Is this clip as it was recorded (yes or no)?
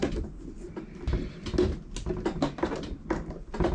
yes